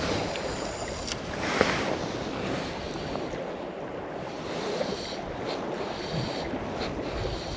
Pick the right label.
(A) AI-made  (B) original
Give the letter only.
B